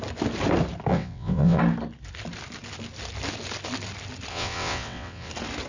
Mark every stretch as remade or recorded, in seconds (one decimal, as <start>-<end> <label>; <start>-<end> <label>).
0.0-0.9 recorded; 0.9-1.6 remade; 1.6-4.3 recorded; 4.3-5.3 remade; 5.3-5.7 recorded